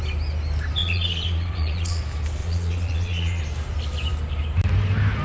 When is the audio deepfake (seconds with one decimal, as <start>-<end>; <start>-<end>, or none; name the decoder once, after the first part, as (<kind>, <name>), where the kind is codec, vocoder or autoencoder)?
0.8-2.0 (vocoder, Vocos); 2.4-3.4